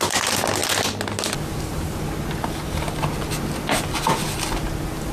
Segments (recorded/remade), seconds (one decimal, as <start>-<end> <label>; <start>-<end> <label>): 0.0-5.1 recorded